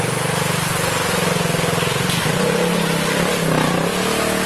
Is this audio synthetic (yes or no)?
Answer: no